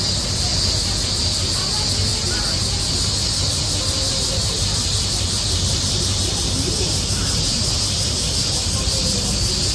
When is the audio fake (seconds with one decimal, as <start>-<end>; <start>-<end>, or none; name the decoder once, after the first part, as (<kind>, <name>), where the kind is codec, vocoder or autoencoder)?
0.5-1.2 (vocoder, BigVGAN v2); 4.4-9.7

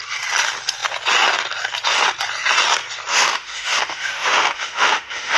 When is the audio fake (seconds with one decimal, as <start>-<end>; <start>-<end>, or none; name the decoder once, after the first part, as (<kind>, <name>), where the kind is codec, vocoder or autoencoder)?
3.1-5.4 (autoencoder, DAC-VAE)

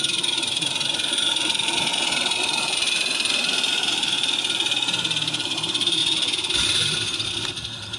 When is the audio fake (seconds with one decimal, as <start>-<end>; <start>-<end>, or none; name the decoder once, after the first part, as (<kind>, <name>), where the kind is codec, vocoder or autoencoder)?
0.0-1.9 (vocoder, BigVGAN v2); 2.4-6.0; 6.6-8.0

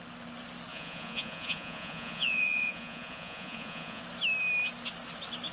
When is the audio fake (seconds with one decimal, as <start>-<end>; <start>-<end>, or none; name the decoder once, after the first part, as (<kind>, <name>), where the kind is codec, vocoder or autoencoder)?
0.7-4.0 (vocoder, Vocos)

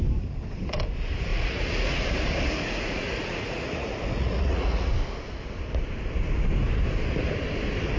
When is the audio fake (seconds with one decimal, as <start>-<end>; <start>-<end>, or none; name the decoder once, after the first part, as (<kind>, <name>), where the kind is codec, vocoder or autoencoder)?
1.3-4.9 (vocoder, Vocos)

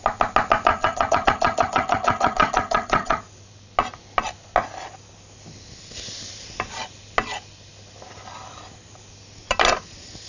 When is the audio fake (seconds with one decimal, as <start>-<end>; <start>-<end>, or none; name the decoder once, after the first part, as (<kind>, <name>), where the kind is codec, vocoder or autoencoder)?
0.7-3.2 (vocoder, HiFi-GAN)